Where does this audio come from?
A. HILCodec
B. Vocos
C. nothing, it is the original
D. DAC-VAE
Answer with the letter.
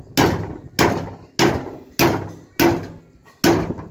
C